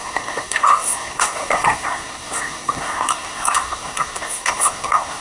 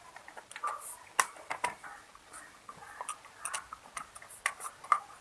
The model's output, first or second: first